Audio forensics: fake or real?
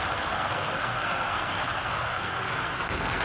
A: fake